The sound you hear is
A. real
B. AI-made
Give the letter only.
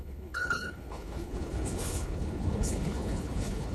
B